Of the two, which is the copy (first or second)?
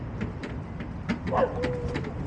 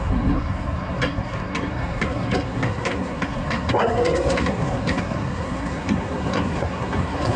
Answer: second